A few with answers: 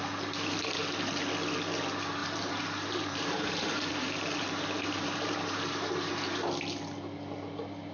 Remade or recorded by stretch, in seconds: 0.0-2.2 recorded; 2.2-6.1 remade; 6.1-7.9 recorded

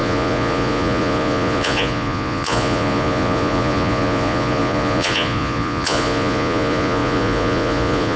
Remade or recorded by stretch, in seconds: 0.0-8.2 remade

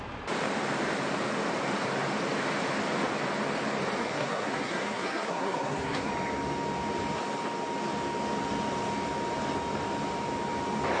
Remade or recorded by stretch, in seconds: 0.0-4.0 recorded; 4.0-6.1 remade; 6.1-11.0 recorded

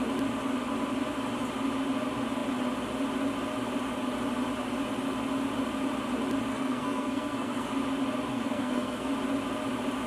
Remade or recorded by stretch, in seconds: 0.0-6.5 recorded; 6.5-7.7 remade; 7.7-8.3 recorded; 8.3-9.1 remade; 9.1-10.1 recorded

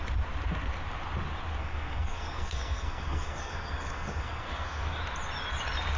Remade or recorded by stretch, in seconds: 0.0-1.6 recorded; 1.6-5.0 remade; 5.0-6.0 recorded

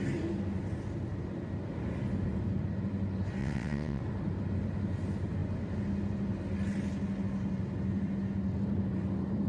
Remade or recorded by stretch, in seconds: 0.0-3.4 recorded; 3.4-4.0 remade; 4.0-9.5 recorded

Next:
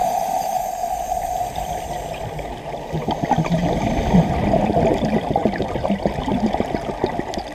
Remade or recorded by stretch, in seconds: 0.0-1.4 remade; 1.4-3.6 recorded; 3.6-4.5 remade; 4.5-7.5 recorded